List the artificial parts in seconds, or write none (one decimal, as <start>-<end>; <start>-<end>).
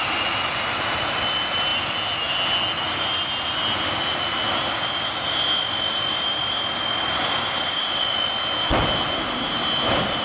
none